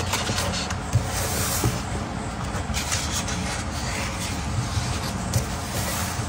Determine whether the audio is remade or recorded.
recorded